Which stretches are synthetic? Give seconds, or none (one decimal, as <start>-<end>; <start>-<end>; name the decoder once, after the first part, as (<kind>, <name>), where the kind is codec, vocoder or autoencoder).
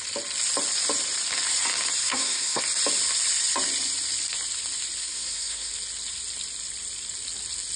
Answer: 2.0-2.6 (codec, SNAC); 5.0-5.7